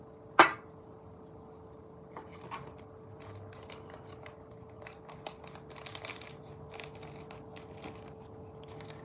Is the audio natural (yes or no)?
yes